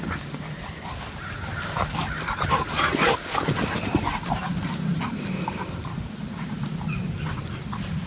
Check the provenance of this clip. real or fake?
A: real